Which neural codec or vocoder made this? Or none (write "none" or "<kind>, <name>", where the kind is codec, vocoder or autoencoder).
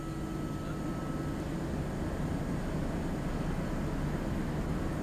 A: none